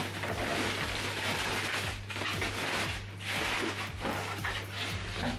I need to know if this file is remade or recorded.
recorded